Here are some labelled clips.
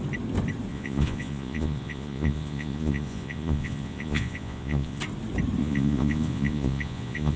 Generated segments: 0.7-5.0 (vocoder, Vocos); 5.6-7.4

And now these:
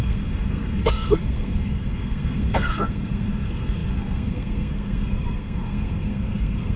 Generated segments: 0.0-6.8 (codec, SNAC)

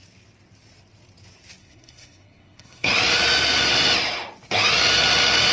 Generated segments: 1.6-2.9 (codec, SNAC)